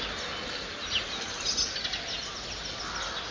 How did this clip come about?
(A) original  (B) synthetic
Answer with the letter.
A